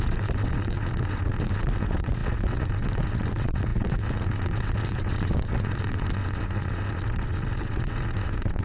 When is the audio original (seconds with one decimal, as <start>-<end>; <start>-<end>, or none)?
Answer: none

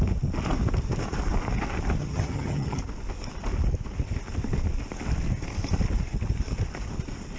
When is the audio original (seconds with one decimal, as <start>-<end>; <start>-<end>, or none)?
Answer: 0.0-2.0; 2.8-7.4

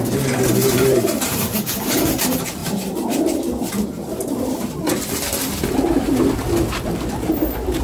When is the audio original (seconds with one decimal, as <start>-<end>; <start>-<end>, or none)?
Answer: 0.0-0.6; 1.6-2.6; 4.7-7.8

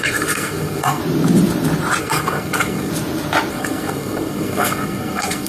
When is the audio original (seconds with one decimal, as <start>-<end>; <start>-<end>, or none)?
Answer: 1.0-2.0; 2.9-3.5

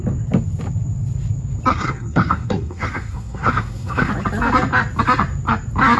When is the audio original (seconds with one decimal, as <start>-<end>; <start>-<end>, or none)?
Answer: 0.0-1.7; 4.1-6.0